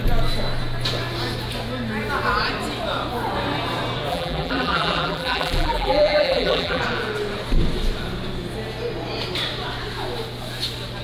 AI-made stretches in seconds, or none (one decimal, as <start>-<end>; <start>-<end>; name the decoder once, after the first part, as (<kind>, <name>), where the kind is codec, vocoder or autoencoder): 4.1-6.8 (vocoder, BigVGAN v2)